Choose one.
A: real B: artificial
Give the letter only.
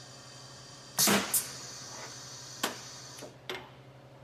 A